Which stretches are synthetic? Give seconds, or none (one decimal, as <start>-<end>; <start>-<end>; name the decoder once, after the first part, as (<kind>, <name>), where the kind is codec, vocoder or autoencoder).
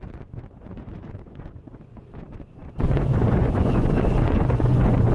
0.0-5.1 (vocoder, Vocos)